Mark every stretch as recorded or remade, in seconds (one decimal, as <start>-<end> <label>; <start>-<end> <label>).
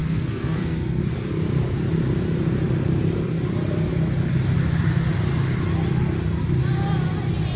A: 0.0-1.0 remade; 1.0-7.6 recorded